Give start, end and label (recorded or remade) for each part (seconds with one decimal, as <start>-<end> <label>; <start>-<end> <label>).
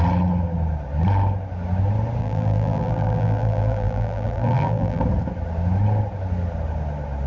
0.0-2.2 recorded; 2.2-5.0 remade; 5.0-7.3 recorded